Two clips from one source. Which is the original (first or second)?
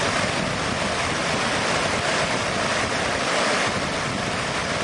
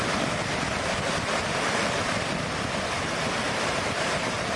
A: first